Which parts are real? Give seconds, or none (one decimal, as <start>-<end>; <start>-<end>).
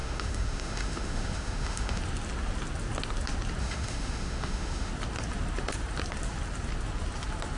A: 2.0-3.6; 4.9-7.6